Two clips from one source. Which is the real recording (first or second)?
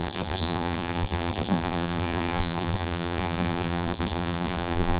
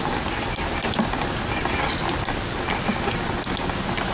second